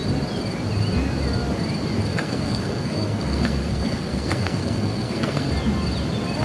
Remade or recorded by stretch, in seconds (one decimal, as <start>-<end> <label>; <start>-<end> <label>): 0.0-2.1 recorded; 2.1-5.5 remade; 5.5-6.4 recorded